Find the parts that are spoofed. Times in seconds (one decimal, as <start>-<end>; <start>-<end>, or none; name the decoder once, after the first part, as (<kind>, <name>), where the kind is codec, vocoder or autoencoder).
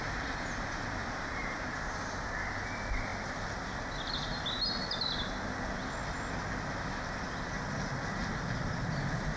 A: 1.0-2.2 (vocoder, BigVGAN v2)